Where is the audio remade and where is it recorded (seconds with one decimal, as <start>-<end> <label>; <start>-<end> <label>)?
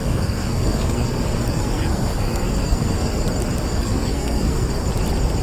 0.0-3.2 remade; 3.2-3.7 recorded; 3.7-4.7 remade; 4.7-5.4 recorded